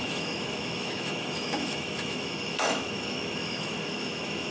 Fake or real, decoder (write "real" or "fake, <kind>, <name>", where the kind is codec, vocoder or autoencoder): fake, autoencoder, DAC-VAE